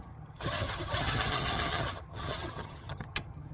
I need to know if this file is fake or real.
fake